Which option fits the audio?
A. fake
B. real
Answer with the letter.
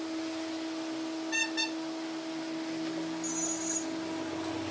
B